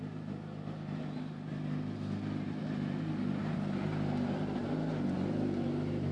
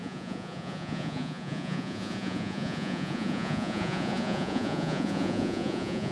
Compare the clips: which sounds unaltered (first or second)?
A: first